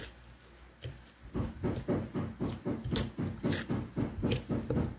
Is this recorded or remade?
recorded